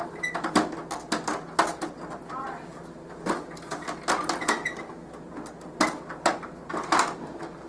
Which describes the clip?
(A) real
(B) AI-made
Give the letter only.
A